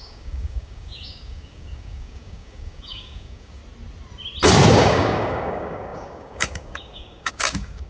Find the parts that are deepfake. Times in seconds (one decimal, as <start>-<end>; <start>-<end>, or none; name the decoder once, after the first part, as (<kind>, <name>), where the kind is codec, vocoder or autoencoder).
0.0-3.6 (codec, DAC); 4.7-7.9